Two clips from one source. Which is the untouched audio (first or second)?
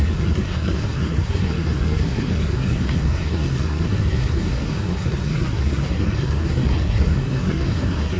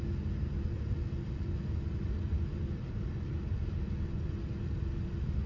second